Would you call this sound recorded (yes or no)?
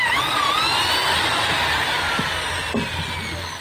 yes